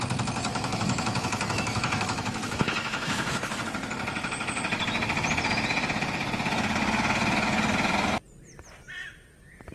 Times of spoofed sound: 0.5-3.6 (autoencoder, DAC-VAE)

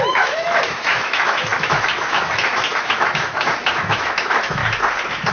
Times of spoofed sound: 0.0-4.6 (autoencoder, DAC-VAE)